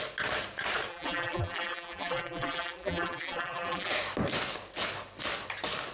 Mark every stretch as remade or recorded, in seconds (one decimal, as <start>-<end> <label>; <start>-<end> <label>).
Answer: 0.0-0.9 recorded; 0.9-3.9 remade; 3.9-5.9 recorded